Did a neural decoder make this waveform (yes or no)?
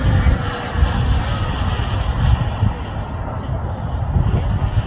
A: no